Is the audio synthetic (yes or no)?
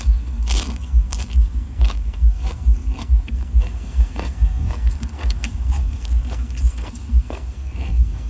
yes